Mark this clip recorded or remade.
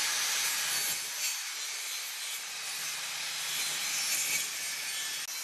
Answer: recorded